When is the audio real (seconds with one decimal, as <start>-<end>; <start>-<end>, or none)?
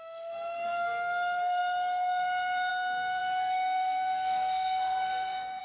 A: none